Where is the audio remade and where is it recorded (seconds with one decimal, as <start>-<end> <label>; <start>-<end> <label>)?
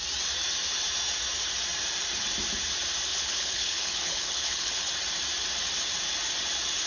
0.0-3.1 recorded; 3.1-4.9 remade; 4.9-6.9 recorded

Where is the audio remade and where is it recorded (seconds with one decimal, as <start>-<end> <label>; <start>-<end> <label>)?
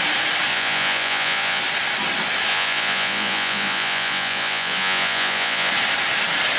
0.0-0.5 recorded; 0.5-1.6 remade; 1.6-2.5 recorded; 2.5-5.7 remade; 5.7-6.6 recorded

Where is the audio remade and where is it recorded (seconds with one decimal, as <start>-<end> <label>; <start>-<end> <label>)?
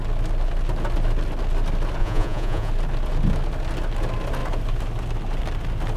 0.0-2.0 recorded; 2.0-2.7 remade; 2.7-6.0 recorded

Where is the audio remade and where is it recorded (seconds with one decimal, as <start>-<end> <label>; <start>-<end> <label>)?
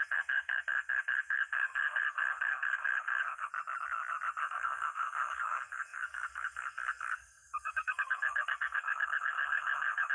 0.0-3.5 remade; 3.5-4.4 recorded; 4.4-10.1 remade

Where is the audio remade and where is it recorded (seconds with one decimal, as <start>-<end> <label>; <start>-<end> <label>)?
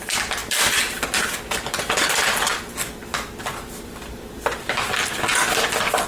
0.0-6.1 recorded